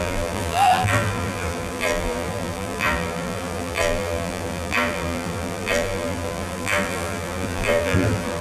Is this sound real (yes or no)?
no